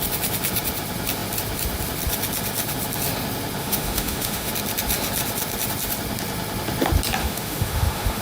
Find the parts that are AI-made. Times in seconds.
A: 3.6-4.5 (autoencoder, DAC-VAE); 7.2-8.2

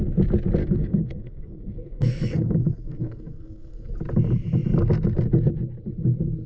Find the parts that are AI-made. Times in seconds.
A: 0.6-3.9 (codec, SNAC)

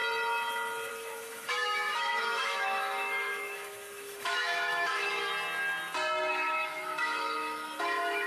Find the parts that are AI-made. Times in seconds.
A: 0.9-5.3 (autoencoder, DAC-VAE); 6.3-8.3

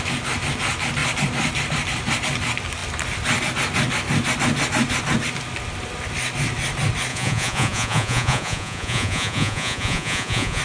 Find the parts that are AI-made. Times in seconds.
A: 7.1-10.6 (vocoder, Vocos)